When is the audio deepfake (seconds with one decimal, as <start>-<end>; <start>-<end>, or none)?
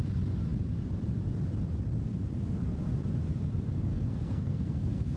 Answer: 3.9-5.2